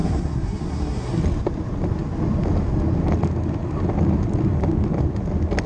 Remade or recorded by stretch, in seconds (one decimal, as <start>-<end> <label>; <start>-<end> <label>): 0.0-1.2 remade; 1.2-5.7 recorded